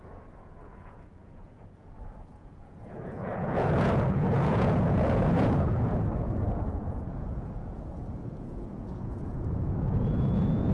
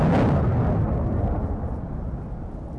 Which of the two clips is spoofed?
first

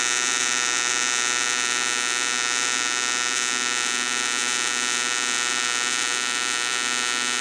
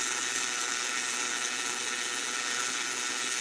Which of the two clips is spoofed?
second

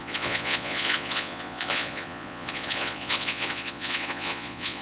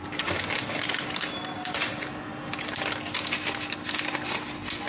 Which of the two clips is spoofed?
first